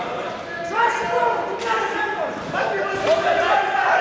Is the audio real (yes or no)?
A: yes